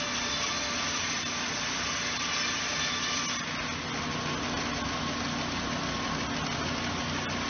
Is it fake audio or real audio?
real